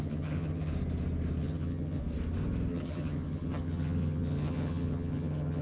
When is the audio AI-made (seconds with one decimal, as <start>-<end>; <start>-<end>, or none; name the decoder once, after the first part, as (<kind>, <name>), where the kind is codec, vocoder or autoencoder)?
0.0-0.7 (vocoder, HiFi-GAN); 1.4-2.0; 2.7-5.6